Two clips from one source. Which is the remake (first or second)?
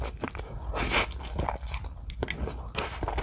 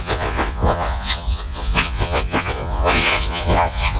second